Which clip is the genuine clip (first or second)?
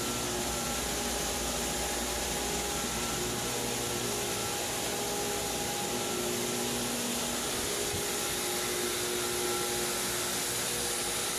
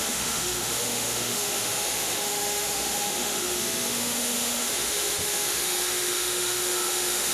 first